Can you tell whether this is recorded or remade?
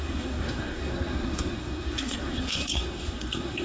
remade